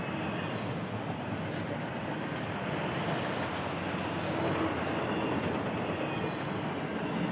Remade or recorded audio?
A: recorded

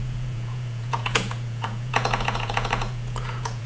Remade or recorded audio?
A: remade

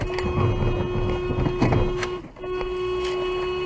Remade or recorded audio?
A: recorded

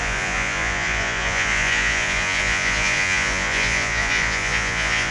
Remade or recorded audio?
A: remade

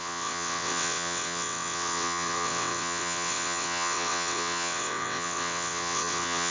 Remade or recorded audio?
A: remade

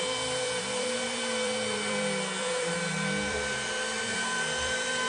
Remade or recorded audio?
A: remade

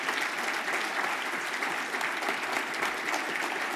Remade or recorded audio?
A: recorded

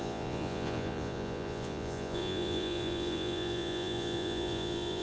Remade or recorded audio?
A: remade